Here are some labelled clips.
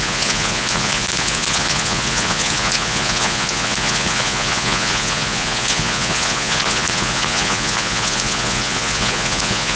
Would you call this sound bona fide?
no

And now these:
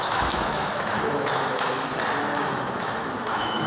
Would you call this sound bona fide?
no